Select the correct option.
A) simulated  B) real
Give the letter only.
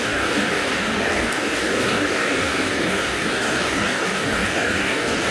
A